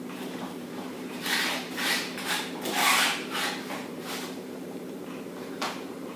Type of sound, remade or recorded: remade